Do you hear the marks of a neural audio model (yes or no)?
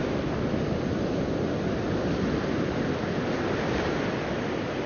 no